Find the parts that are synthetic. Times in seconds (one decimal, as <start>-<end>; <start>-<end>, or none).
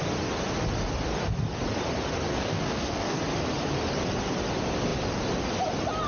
2.3-3.2